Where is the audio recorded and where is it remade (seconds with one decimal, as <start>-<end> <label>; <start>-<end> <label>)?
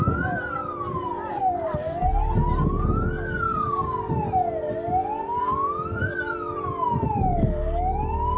0.0-1.3 recorded; 1.3-2.0 remade; 2.0-3.5 recorded; 3.5-4.1 remade; 4.1-8.4 recorded